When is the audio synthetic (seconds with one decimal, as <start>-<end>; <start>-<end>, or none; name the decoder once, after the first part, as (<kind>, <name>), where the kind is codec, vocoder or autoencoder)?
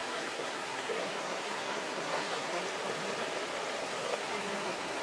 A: 0.0-2.6 (codec, SNAC); 3.8-5.0